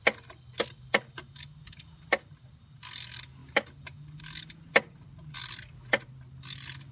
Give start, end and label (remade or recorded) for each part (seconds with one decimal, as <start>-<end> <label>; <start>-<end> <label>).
0.0-6.9 recorded